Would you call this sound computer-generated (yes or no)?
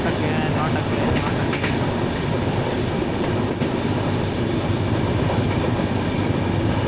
no